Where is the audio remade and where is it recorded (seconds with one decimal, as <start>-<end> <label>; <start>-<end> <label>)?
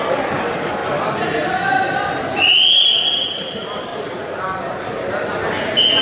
0.0-0.8 remade; 0.8-1.4 recorded; 1.4-3.9 remade; 3.9-5.6 recorded; 5.6-6.0 remade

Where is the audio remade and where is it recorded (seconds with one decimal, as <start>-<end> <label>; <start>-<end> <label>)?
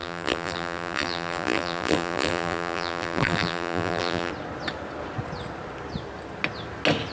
0.0-4.3 remade; 4.3-7.1 recorded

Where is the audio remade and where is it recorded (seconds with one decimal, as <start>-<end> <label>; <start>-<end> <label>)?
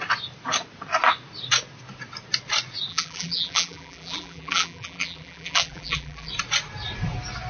0.0-2.9 recorded; 2.9-6.3 remade; 6.3-7.5 recorded